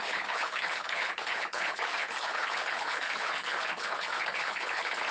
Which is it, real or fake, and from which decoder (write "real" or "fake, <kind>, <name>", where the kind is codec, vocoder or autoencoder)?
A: fake, codec, HILCodec